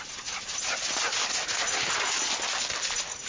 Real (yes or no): yes